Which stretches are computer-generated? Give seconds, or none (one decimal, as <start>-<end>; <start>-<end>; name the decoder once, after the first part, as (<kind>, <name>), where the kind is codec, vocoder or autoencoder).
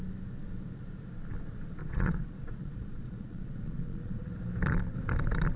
1.8-4.3 (vocoder, Vocos)